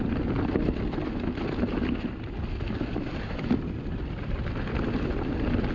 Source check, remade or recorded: recorded